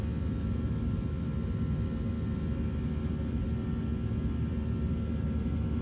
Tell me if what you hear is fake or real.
real